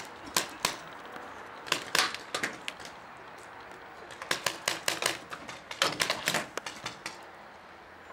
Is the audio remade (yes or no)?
no